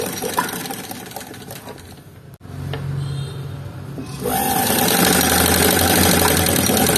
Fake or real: real